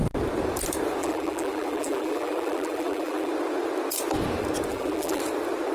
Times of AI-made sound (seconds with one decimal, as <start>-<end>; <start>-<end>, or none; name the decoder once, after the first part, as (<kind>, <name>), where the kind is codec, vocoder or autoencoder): 1.0-3.3 (vocoder, BigVGAN v2); 4.7-5.2